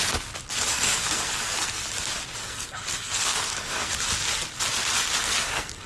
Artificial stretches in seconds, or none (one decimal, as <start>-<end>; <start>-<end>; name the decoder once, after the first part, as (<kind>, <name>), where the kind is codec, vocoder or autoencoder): 0.7-1.8 (codec, SNAC); 2.4-3.9; 5.2-5.9